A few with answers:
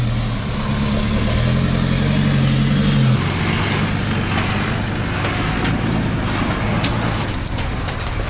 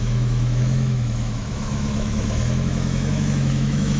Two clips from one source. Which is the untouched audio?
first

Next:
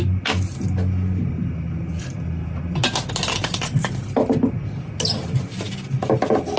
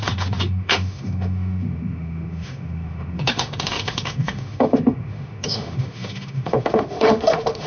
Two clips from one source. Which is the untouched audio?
first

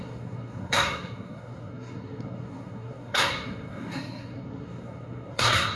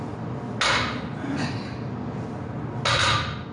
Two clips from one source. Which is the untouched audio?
second